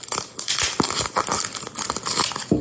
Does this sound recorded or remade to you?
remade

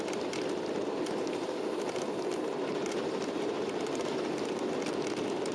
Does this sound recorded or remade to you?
recorded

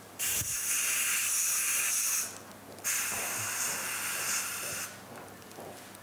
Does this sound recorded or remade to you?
recorded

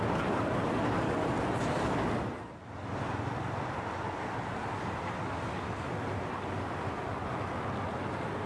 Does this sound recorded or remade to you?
recorded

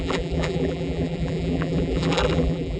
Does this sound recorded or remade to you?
remade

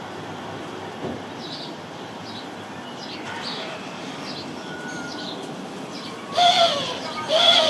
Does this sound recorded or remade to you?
remade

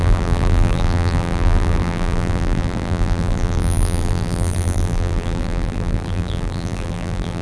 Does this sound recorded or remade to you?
remade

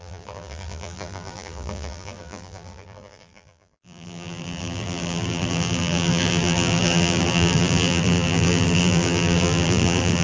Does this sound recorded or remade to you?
remade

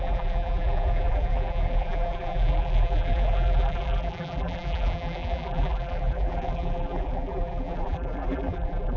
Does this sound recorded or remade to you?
remade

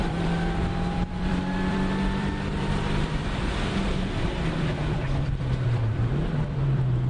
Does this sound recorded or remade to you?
remade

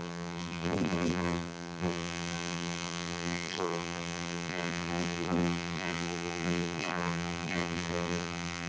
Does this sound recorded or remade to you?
remade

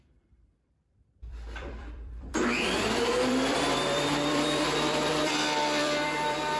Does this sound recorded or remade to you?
remade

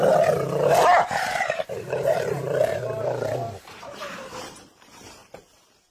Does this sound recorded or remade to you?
remade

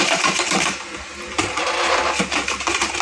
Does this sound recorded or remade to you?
remade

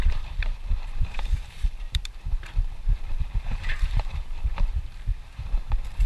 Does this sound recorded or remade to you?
remade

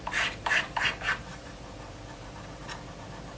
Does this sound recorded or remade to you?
remade